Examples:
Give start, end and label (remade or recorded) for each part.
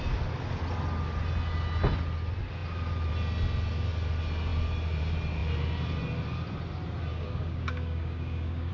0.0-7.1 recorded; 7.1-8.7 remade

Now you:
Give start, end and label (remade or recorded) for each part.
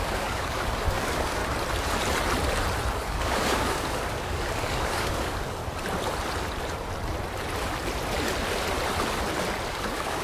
0.0-1.4 remade; 1.4-3.0 recorded; 3.0-5.6 remade; 5.6-9.7 recorded; 9.7-10.2 remade